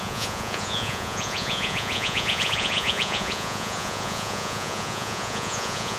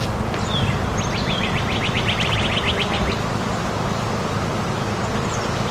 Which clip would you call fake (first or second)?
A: first